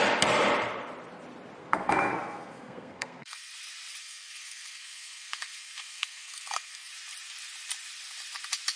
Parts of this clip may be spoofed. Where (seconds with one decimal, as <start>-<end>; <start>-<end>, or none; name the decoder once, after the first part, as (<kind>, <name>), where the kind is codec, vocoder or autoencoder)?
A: 1.6-3.5 (codec, SNAC); 4.0-6.9

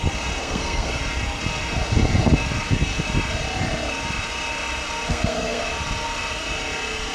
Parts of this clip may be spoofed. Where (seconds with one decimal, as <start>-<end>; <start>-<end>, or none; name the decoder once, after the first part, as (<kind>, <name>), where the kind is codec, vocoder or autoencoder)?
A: 0.4-1.0 (codec, SNAC); 5.1-5.6

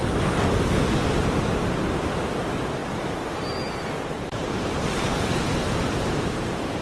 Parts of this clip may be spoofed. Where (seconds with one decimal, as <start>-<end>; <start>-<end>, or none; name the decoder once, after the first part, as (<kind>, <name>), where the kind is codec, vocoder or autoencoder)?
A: none